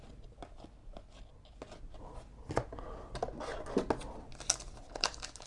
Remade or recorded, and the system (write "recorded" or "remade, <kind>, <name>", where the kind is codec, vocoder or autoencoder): recorded